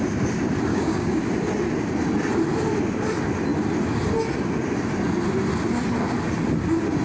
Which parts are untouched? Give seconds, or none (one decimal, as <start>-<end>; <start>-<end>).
0.0-0.7; 1.2-7.0